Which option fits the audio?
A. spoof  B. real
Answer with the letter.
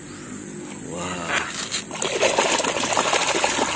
B